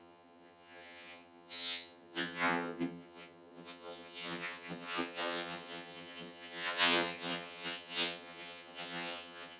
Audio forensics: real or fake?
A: fake